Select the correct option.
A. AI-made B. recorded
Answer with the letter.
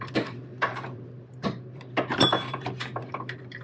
A